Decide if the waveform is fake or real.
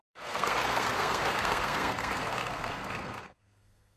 fake